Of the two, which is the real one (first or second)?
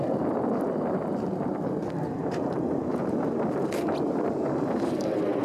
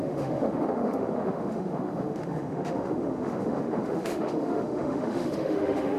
first